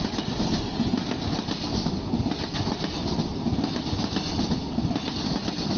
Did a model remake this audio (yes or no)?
no